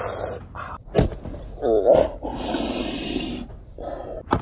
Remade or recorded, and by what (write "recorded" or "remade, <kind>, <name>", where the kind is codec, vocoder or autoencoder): recorded